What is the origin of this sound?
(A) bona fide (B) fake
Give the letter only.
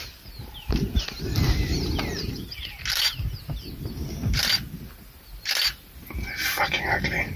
A